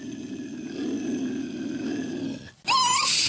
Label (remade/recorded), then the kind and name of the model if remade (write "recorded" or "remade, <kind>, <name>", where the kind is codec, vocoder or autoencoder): recorded